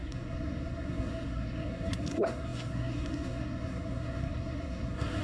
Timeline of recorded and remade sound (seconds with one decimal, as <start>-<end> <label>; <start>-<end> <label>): 0.0-5.2 remade